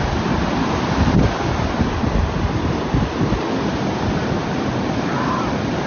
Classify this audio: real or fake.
real